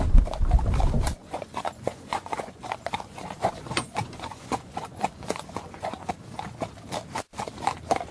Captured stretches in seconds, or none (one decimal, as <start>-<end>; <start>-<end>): 0.0-1.2; 6.1-8.1